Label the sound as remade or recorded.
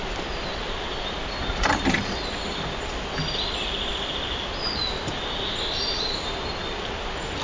recorded